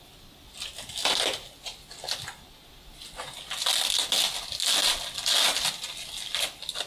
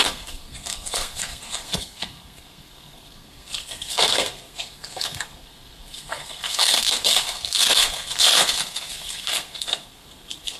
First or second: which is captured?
first